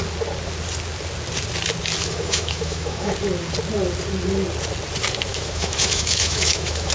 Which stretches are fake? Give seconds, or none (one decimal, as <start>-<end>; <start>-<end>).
2.0-3.1; 5.3-6.9